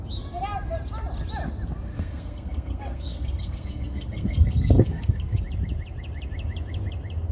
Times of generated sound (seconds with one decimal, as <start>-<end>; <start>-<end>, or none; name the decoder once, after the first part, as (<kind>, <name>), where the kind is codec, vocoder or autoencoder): 1.9-5.4 (codec, SNAC)